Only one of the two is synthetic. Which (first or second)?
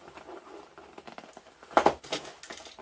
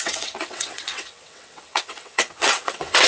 second